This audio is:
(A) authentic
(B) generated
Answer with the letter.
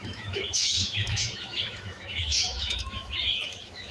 B